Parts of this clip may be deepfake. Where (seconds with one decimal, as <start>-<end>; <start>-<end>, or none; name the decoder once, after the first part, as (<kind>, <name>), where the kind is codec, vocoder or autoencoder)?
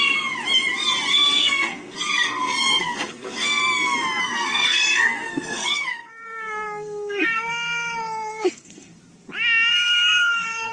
1.1-3.6 (codec, SNAC); 4.2-9.0; 9.7-10.7